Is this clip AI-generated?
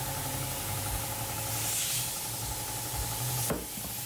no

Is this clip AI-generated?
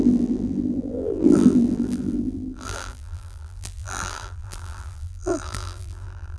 yes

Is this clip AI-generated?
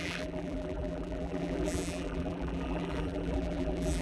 yes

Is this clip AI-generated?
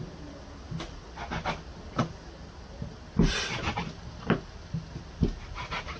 no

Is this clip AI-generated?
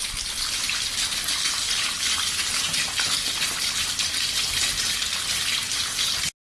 no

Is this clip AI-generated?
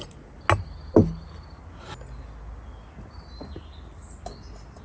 no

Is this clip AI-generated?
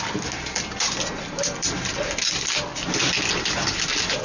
no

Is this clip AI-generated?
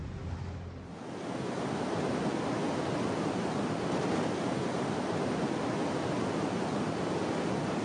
no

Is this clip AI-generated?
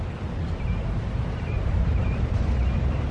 yes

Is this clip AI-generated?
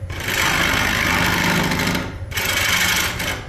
no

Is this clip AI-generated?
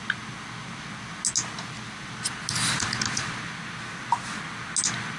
no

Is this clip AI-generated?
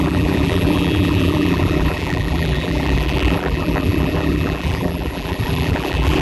yes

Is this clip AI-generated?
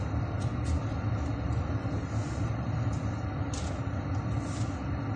no